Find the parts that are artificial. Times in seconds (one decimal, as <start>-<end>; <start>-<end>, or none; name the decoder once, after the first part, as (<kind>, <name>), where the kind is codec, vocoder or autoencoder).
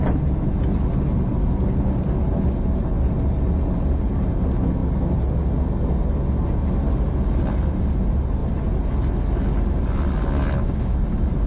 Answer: none